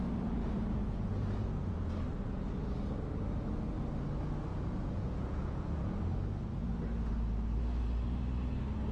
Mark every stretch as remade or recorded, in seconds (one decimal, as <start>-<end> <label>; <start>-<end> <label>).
0.0-0.4 recorded; 0.4-1.9 remade; 1.9-4.5 recorded; 4.5-6.0 remade; 6.0-8.9 recorded